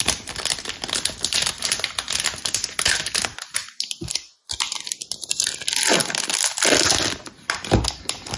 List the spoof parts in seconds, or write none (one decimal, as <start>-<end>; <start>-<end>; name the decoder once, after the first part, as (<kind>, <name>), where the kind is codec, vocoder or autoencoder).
none